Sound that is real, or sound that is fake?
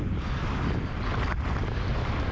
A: real